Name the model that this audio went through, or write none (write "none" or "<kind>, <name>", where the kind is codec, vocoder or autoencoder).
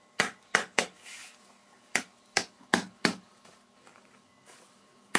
codec, DAC